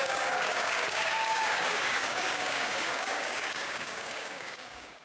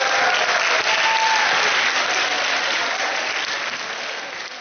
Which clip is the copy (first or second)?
first